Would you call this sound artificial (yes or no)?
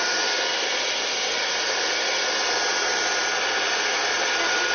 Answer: no